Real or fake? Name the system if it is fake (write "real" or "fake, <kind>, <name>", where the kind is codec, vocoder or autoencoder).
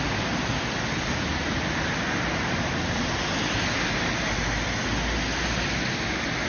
real